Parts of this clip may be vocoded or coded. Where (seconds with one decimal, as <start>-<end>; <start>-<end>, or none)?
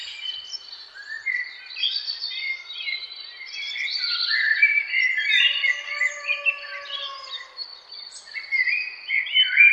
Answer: 1.0-4.9